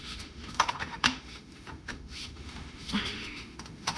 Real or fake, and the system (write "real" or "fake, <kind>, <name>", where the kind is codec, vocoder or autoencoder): fake, autoencoder, DAC-VAE